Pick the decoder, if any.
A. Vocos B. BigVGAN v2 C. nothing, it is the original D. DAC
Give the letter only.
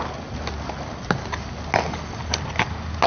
C